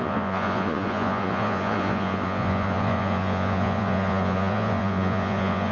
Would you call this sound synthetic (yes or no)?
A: yes